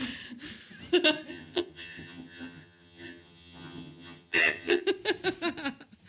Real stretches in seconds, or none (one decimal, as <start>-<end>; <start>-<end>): 0.0-1.3; 4.8-6.1